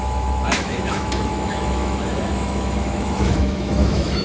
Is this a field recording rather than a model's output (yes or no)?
no